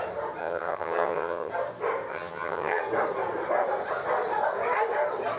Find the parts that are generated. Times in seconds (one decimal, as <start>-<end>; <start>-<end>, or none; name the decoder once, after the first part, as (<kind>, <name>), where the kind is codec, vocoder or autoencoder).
0.4-1.5 (vocoder, HiFi-GAN); 2.1-2.8